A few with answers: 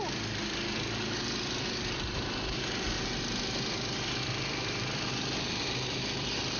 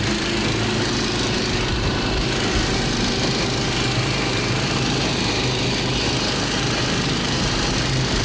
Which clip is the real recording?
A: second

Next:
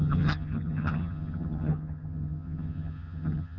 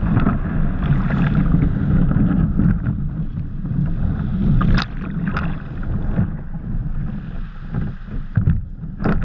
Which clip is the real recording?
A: second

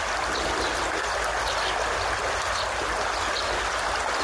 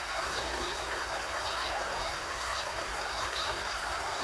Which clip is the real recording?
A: first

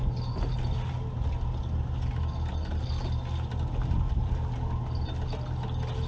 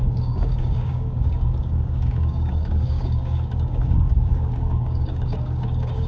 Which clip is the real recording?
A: first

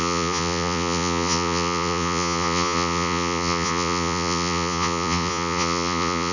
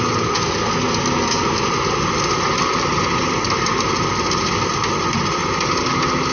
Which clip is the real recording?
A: second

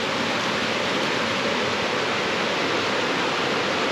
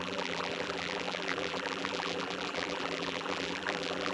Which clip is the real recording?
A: first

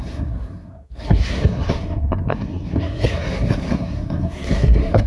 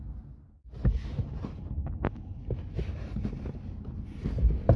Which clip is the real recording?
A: second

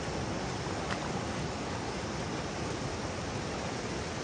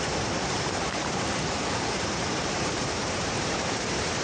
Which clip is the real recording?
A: first